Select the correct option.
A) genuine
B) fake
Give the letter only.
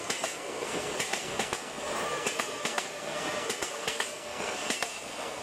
B